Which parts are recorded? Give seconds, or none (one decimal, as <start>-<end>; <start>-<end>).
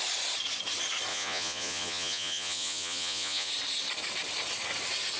0.0-1.1; 3.5-5.2